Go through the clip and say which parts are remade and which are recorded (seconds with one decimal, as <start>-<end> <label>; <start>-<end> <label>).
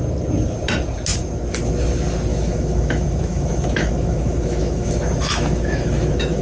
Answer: 0.0-2.3 recorded; 2.3-6.4 remade